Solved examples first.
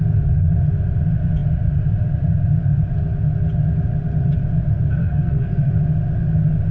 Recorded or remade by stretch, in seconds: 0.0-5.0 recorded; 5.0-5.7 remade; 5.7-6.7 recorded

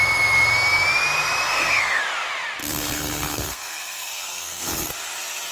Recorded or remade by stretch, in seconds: 0.0-1.5 recorded; 1.5-2.0 remade; 2.0-2.6 recorded; 2.6-4.9 remade; 4.9-5.5 recorded

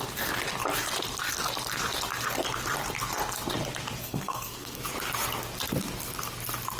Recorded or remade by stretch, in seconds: 0.0-4.0 recorded; 4.0-4.8 remade; 4.8-6.8 recorded